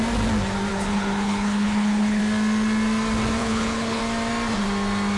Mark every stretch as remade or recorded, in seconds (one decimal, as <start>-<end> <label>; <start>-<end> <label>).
0.0-0.7 recorded; 0.7-2.2 remade; 2.2-3.4 recorded; 3.4-4.0 remade; 4.0-5.2 recorded